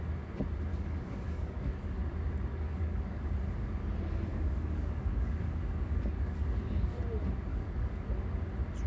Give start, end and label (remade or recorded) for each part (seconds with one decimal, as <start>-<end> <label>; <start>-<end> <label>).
0.0-0.7 recorded; 0.7-2.0 remade; 2.0-2.5 recorded; 2.5-3.3 remade; 3.3-4.3 recorded; 4.3-7.0 remade; 7.0-7.5 recorded; 7.5-8.1 remade; 8.1-8.9 recorded